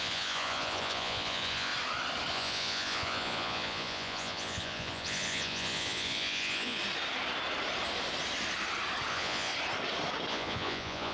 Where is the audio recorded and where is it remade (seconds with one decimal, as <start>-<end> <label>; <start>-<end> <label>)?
0.0-1.7 remade; 1.7-2.3 recorded; 2.3-6.8 remade; 6.8-9.1 recorded; 9.1-9.5 remade; 9.5-10.3 recorded; 10.3-11.1 remade